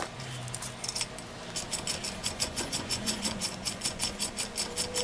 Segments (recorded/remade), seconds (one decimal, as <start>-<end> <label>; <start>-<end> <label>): 0.0-2.2 recorded; 2.2-4.3 remade; 4.3-5.0 recorded